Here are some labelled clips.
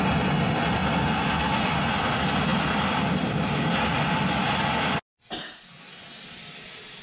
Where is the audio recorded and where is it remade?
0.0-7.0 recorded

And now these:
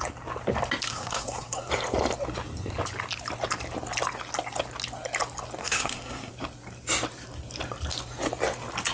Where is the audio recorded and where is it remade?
0.0-0.9 recorded; 0.9-1.7 remade; 1.7-5.6 recorded; 5.6-6.3 remade; 6.3-8.9 recorded

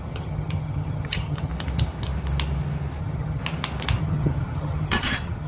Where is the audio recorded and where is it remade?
0.0-1.5 remade; 1.5-3.0 recorded; 3.0-3.4 remade; 3.4-4.0 recorded; 4.0-5.5 remade

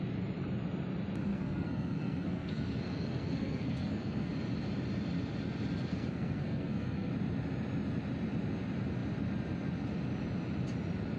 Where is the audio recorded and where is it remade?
0.0-1.3 recorded; 1.3-4.3 remade; 4.3-5.9 recorded; 5.9-7.1 remade; 7.1-11.2 recorded

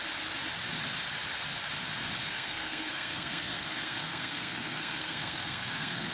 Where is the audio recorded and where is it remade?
0.0-2.2 recorded; 2.2-6.1 remade

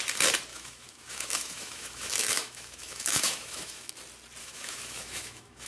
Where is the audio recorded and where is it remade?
0.0-0.5 recorded; 0.5-3.9 remade; 3.9-4.4 recorded; 4.4-5.7 remade

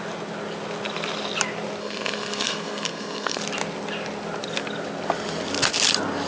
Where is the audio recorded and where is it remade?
0.0-1.8 recorded; 1.8-3.4 remade; 3.4-6.3 recorded